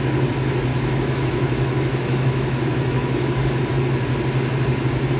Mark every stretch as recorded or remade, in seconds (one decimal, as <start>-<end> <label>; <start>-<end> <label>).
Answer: 0.0-0.7 recorded; 0.7-3.8 remade; 3.8-5.2 recorded